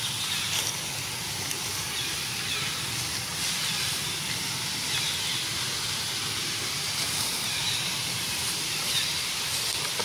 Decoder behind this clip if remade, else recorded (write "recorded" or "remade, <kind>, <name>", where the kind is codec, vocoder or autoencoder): recorded